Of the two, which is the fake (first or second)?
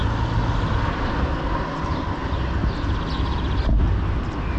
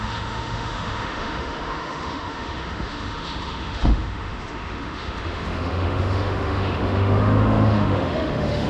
second